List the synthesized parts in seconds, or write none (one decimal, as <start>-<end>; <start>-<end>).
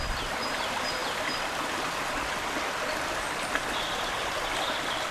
none